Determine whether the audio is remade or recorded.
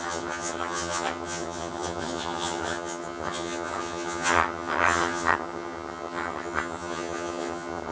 remade